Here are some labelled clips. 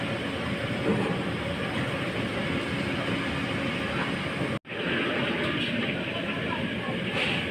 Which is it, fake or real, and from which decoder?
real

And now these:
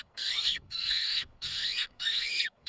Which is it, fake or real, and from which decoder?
fake, codec, SNAC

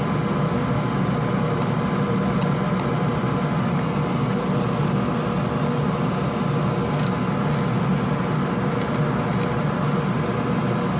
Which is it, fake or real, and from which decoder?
real